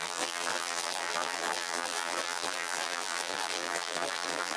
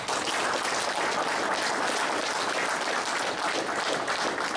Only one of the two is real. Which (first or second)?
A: second